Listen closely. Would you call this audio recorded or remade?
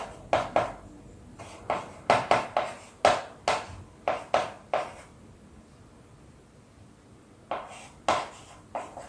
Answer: recorded